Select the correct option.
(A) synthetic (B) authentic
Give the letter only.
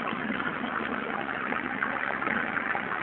A